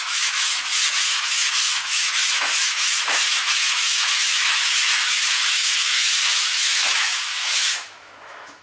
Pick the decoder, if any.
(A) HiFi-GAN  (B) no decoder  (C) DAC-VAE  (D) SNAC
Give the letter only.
C